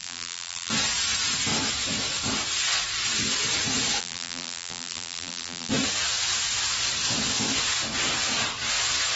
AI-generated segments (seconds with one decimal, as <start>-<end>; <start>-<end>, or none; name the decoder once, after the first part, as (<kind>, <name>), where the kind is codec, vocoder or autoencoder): 0.0-0.7 (vocoder, BigVGAN v2); 4.0-5.7